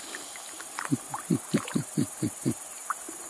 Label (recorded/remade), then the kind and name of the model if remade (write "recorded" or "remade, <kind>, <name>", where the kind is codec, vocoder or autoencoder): recorded